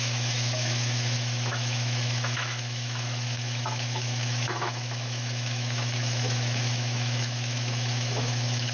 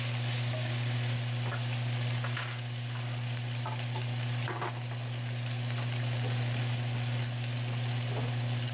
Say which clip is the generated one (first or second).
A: first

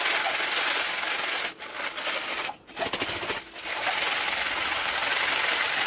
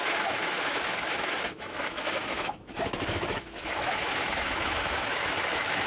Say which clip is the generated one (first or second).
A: second